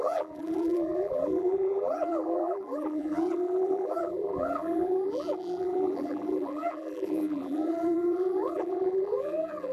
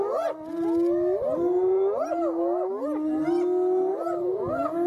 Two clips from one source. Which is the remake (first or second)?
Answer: first